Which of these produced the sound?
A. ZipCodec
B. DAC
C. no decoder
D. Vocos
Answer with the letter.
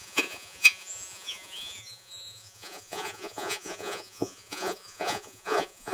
D